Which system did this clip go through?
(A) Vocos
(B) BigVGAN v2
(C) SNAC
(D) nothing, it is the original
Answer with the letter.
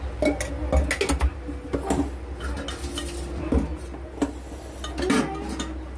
D